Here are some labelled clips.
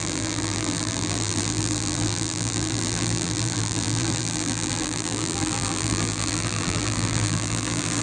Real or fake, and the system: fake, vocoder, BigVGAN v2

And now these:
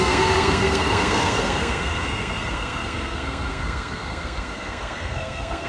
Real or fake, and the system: fake, codec, SNAC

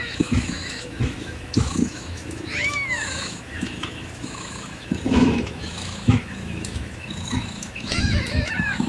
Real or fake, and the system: fake, autoencoder, DAC-VAE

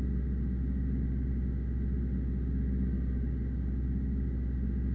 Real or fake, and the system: real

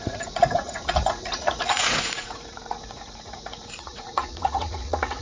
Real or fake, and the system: fake, vocoder, Vocos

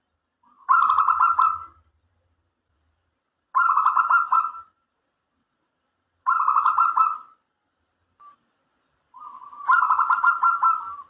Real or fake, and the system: fake, vocoder, BigVGAN v2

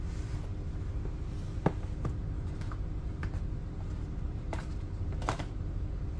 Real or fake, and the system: fake, vocoder, BigVGAN v2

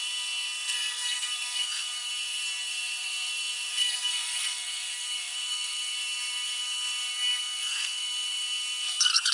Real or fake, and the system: fake, codec, SNAC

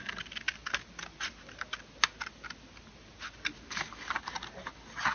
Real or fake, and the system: real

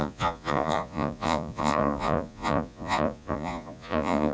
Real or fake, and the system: fake, vocoder, Vocos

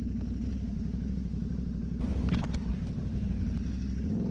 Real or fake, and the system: real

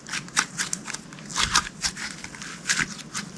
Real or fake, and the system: real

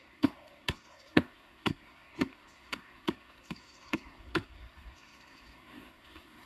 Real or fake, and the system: fake, codec, SNAC